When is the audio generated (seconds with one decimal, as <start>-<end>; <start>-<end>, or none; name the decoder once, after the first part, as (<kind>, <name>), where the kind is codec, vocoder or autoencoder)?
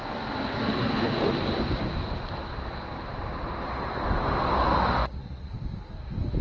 5.0-5.5 (vocoder, Vocos)